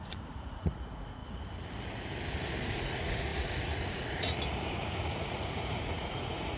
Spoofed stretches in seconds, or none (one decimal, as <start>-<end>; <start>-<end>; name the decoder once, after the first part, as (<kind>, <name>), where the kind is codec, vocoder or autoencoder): 0.0-1.2 (vocoder, Vocos); 2.6-6.6